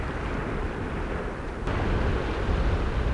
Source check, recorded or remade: recorded